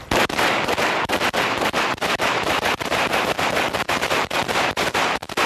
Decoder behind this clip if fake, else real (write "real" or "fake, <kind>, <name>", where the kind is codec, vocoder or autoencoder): fake, vocoder, BigVGAN v2